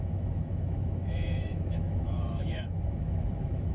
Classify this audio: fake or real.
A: fake